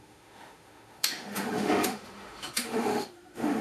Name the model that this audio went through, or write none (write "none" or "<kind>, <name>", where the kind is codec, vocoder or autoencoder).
autoencoder, DAC-VAE